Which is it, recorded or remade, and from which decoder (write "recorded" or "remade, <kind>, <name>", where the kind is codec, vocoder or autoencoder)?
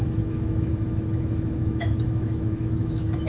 remade, autoencoder, DAC-VAE